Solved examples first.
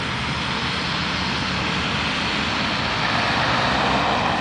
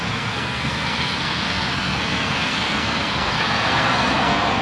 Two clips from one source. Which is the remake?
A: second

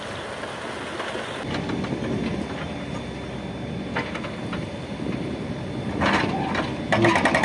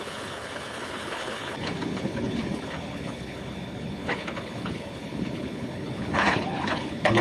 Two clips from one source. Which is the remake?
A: second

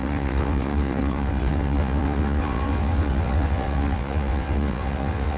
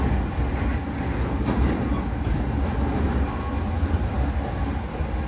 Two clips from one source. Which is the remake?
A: first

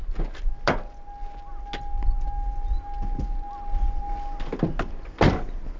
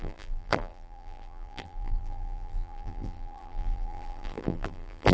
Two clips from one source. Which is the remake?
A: second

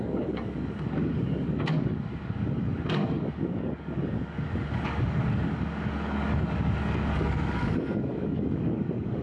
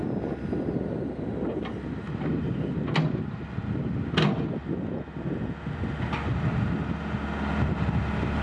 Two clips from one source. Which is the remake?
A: first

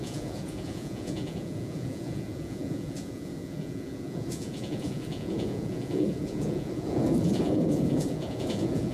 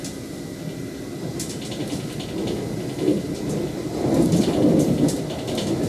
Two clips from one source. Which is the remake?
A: first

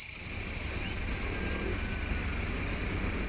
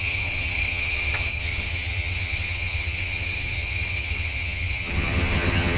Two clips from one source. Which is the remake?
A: second